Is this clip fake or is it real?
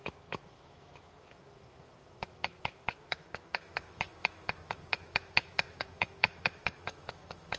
fake